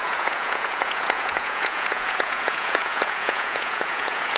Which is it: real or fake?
fake